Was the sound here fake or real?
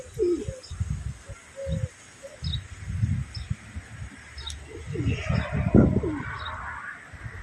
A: real